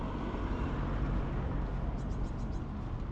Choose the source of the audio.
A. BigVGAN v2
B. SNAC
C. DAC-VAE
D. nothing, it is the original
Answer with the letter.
D